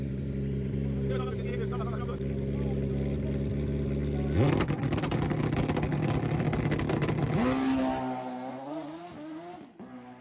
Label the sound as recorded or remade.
recorded